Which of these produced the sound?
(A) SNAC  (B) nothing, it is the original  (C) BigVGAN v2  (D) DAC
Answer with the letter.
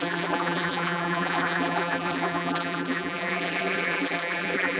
C